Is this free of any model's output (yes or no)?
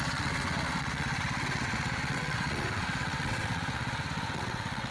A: no